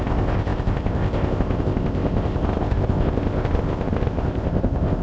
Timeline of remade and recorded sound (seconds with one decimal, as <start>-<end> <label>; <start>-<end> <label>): 0.0-5.0 remade